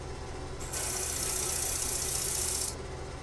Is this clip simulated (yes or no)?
no